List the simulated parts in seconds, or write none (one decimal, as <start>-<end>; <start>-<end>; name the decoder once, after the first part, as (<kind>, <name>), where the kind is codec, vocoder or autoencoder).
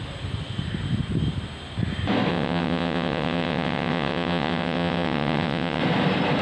2.3-5.8 (vocoder, WaveNeXt)